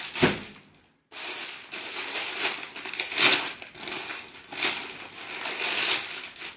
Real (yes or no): yes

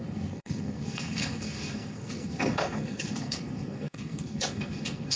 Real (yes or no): no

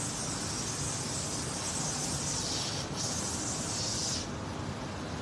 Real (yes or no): yes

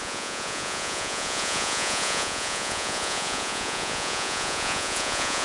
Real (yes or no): no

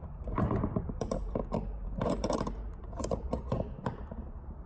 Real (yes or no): no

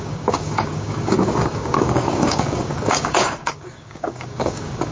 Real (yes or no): no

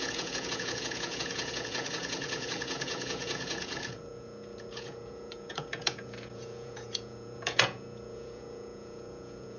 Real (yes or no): no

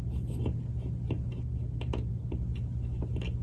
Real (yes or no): yes